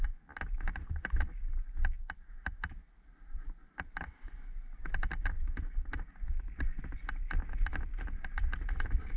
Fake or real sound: real